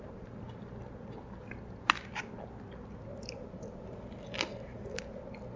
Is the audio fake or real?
real